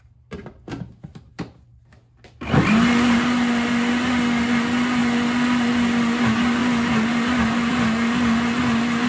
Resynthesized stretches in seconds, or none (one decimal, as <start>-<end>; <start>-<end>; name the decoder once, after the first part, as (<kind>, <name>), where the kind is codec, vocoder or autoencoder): none